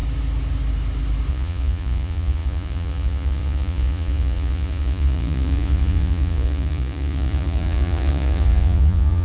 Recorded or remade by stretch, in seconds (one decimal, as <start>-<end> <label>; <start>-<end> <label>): 0.0-1.3 recorded; 1.3-9.2 remade